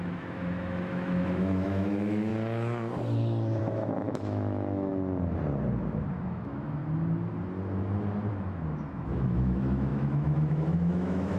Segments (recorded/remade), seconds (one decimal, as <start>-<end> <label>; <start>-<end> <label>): 0.0-2.3 remade; 2.3-3.6 recorded; 3.6-4.9 remade; 4.9-6.1 recorded; 6.1-6.8 remade; 6.8-8.3 recorded; 8.3-11.4 remade